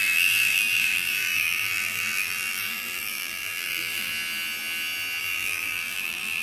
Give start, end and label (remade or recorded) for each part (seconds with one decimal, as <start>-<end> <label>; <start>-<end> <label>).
0.0-4.1 remade; 4.1-5.2 recorded; 5.2-6.4 remade